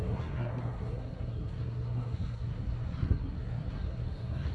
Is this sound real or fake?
fake